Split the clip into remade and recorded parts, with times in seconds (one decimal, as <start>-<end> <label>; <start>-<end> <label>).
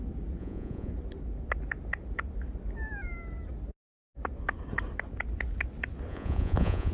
0.0-0.4 recorded; 0.4-0.9 remade; 0.9-6.1 recorded; 6.1-6.9 remade